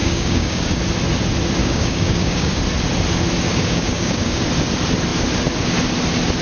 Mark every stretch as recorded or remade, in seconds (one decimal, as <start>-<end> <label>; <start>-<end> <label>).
0.0-0.8 remade; 0.8-1.6 recorded; 1.6-2.6 remade; 2.6-3.5 recorded; 3.5-4.4 remade; 4.4-6.4 recorded